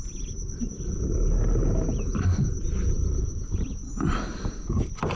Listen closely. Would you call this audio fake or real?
real